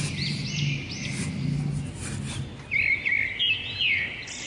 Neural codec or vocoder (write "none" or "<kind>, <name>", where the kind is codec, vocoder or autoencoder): none